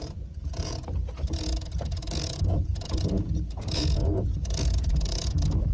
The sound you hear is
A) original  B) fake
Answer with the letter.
B